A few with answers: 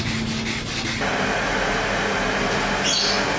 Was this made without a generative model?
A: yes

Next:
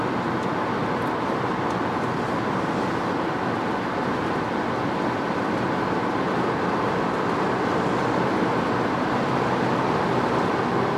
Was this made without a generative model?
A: yes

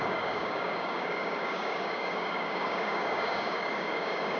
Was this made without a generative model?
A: no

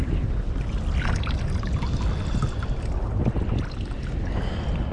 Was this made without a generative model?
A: yes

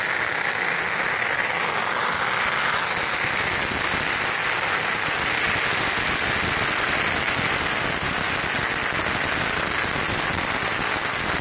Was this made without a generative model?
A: yes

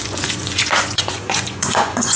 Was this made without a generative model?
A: no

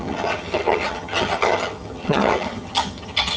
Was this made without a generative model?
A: no